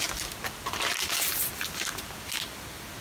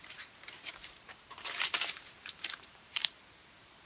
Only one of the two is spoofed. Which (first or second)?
second